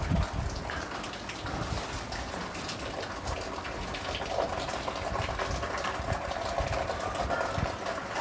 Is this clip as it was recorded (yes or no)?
yes